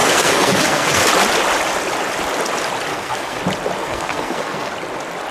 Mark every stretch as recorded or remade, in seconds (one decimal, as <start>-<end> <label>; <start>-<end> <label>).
0.0-1.1 remade; 1.1-2.9 recorded; 2.9-3.4 remade; 3.4-3.8 recorded; 3.8-4.7 remade; 4.7-5.3 recorded